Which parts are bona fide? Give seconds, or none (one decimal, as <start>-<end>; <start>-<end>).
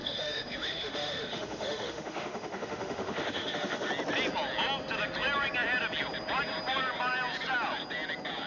3.9-8.5